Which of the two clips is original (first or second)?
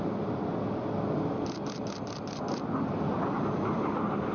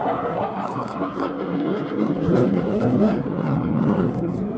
first